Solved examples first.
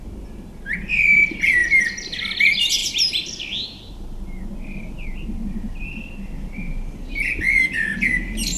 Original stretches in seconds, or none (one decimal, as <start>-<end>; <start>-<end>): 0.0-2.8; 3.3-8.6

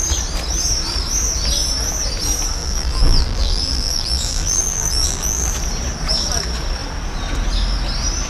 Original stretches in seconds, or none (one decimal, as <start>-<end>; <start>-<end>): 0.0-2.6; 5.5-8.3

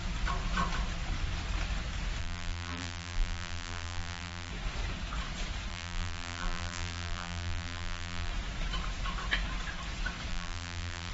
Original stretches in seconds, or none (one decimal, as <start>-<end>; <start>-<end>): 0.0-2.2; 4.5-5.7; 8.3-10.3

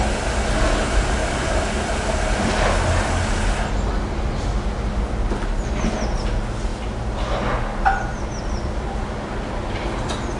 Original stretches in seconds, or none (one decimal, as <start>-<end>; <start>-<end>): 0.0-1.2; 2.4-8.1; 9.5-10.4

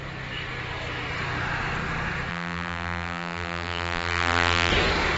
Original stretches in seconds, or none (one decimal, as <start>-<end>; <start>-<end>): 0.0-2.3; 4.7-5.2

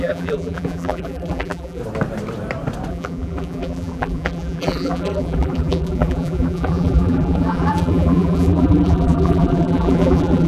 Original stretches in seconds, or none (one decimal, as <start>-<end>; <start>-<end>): 1.8-2.9

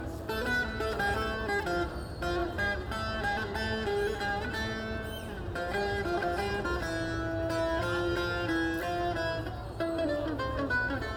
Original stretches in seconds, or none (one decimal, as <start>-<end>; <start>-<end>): 0.0-2.4; 6.6-11.2

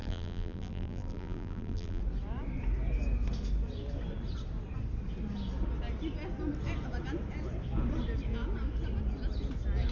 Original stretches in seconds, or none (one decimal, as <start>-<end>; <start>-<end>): 2.0-9.9